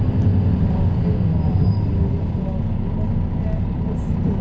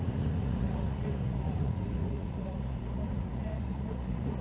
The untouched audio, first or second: first